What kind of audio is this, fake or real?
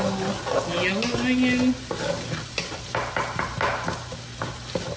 real